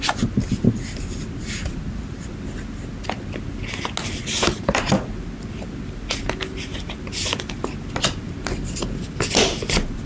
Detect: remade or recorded recorded